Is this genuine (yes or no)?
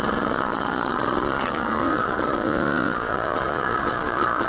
no